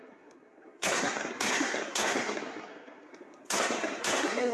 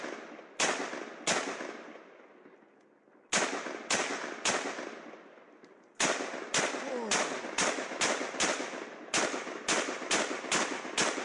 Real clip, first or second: second